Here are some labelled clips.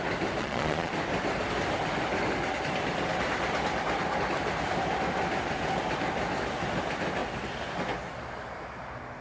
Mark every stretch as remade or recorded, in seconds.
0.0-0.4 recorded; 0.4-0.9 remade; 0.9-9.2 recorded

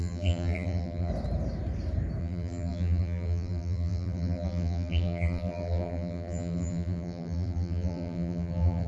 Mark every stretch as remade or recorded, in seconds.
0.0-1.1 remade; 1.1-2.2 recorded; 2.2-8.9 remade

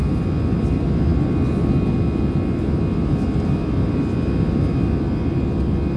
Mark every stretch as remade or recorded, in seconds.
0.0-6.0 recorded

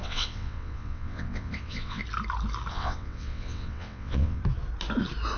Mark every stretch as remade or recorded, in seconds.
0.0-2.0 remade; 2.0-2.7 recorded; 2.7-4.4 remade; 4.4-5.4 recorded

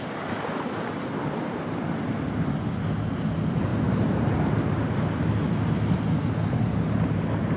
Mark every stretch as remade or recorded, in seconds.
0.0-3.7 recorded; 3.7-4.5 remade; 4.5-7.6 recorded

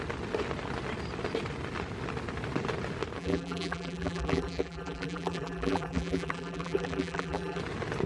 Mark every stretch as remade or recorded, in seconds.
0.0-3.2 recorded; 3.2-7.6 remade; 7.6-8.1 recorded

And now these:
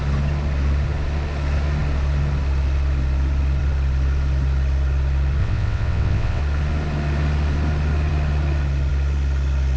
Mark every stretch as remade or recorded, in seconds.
0.0-5.4 recorded; 5.4-6.4 remade; 6.4-9.8 recorded